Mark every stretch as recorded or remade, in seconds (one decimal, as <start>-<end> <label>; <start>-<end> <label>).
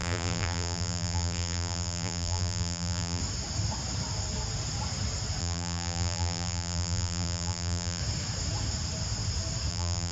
0.0-3.2 remade; 3.2-5.4 recorded; 5.4-8.0 remade; 8.0-9.7 recorded; 9.7-10.1 remade